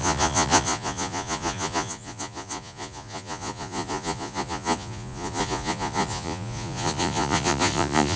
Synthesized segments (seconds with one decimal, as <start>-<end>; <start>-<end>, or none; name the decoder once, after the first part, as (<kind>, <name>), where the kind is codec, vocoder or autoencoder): 0.0-8.2 (vocoder, Vocos)